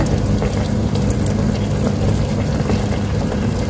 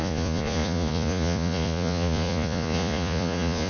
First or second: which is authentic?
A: first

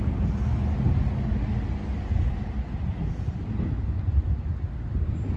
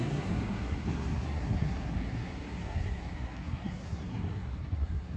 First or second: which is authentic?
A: first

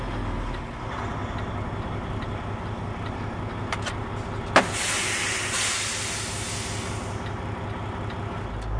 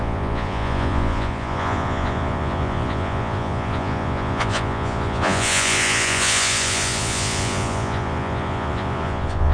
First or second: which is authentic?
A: first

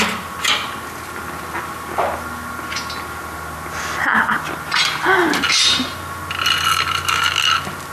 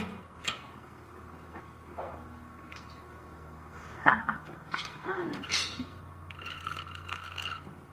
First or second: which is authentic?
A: first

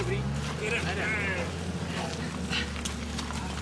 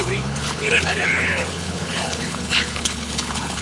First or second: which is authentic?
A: first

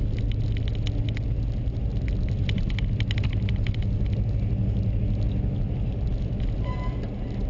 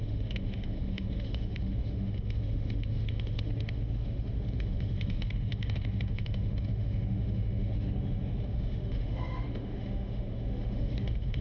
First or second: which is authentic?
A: first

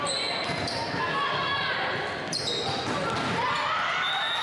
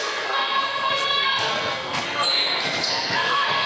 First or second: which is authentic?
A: first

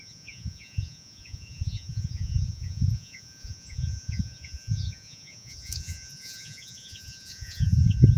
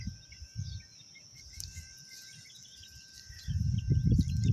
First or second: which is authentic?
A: second